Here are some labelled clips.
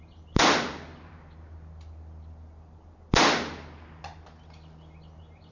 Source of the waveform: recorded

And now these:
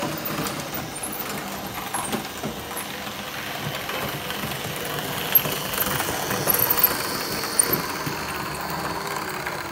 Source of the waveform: recorded